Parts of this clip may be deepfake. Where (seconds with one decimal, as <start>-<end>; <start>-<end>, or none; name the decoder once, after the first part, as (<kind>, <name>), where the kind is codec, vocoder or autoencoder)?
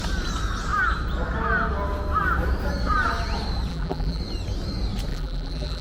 3.7-4.2 (vocoder, BigVGAN v2); 5.1-5.8